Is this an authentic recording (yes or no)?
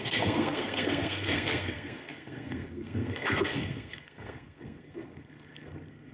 no